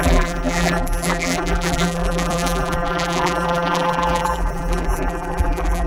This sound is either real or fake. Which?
fake